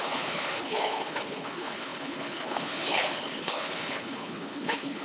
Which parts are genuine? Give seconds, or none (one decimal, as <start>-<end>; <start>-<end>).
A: none